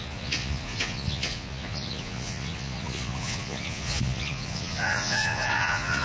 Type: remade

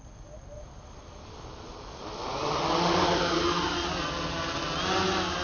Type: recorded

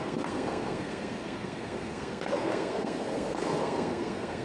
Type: remade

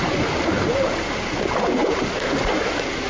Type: recorded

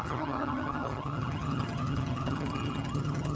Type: remade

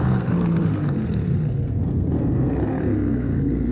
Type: remade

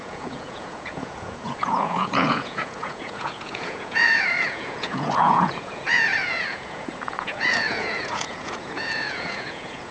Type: remade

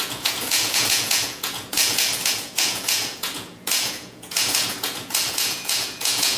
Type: remade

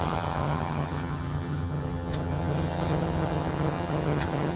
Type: remade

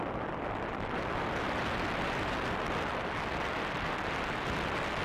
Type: recorded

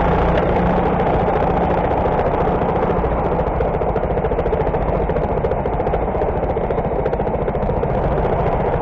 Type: recorded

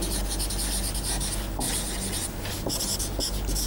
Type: recorded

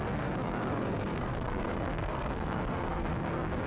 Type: remade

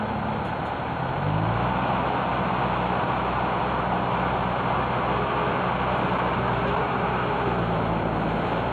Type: recorded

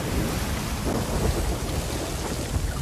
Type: recorded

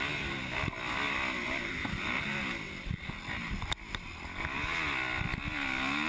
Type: recorded